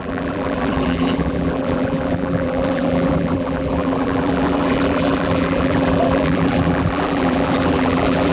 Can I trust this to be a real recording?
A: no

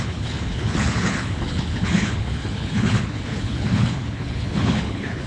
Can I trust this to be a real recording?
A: no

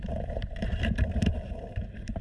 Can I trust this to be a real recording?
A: no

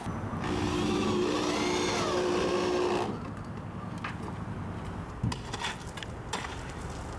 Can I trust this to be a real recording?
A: yes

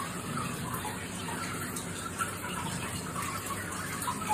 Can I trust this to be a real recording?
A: no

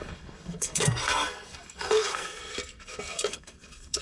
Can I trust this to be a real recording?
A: no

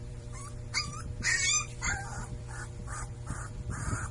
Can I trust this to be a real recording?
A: no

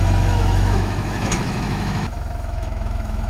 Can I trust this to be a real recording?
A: no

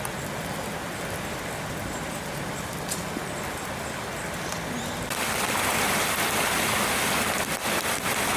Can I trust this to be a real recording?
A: yes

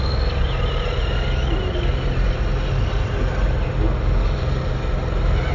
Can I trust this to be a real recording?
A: yes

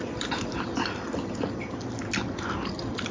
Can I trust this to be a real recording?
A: yes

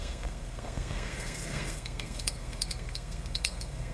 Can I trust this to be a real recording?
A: no